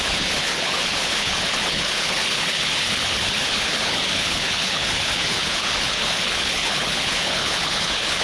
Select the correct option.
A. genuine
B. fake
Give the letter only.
B